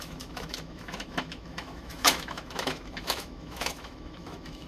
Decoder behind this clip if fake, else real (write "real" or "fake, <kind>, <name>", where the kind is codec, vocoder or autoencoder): fake, autoencoder, DAC-VAE